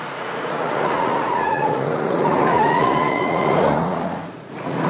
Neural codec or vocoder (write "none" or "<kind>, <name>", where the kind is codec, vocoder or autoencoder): vocoder, Vocos